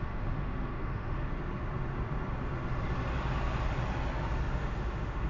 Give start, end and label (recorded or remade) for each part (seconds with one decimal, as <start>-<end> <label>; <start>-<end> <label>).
0.0-1.3 remade; 1.3-4.5 recorded; 4.5-5.3 remade